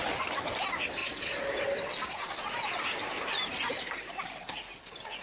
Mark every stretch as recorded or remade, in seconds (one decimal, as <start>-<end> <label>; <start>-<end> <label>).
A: 0.0-5.2 recorded